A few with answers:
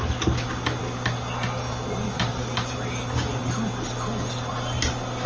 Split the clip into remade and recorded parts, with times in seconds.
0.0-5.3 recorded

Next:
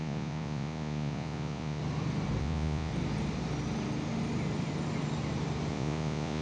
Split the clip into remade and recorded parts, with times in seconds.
0.0-1.8 remade; 1.8-2.4 recorded; 2.4-2.9 remade; 2.9-5.7 recorded; 5.7-6.4 remade

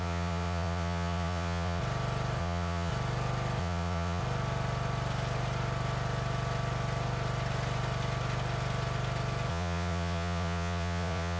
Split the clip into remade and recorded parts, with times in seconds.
0.0-1.8 remade; 1.8-2.4 recorded; 2.4-2.9 remade; 2.9-3.6 recorded; 3.6-4.2 remade; 4.2-9.5 recorded; 9.5-11.4 remade

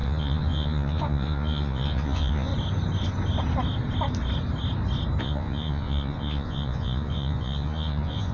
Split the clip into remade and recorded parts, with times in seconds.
0.0-2.5 remade; 2.5-5.2 recorded; 5.2-8.3 remade